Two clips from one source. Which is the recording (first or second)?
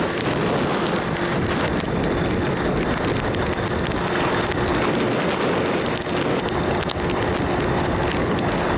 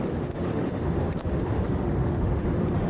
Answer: first